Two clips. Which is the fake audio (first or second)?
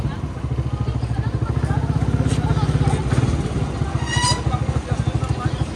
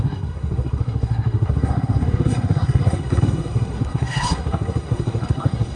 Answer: second